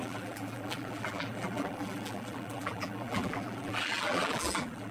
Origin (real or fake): fake